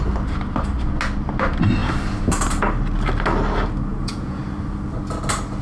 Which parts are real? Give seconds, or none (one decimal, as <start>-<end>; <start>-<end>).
0.0-3.9; 4.4-5.6